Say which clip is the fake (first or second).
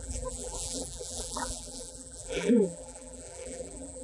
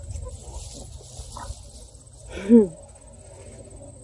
first